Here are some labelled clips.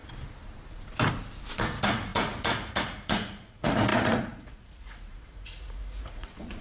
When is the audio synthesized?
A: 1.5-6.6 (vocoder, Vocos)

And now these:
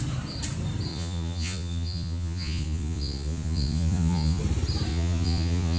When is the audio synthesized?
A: 0.9-4.4 (vocoder, Vocos); 4.9-5.8

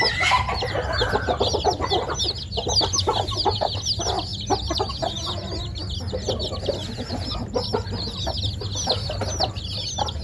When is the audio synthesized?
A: none

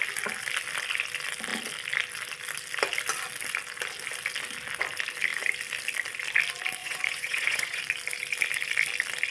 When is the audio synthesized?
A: 6.8-7.8 (vocoder, Vocos)

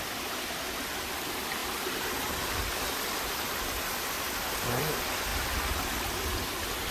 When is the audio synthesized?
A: none

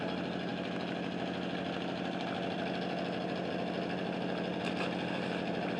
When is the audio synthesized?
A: none